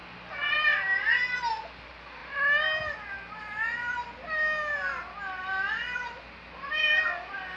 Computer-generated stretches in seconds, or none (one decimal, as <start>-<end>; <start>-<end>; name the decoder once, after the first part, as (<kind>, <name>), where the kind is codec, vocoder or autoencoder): none